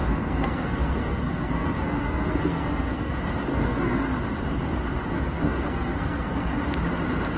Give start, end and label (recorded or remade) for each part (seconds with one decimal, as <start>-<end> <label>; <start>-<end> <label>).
0.0-3.1 remade; 3.1-3.5 recorded; 3.5-4.1 remade; 4.1-5.1 recorded; 5.1-6.5 remade; 6.5-7.4 recorded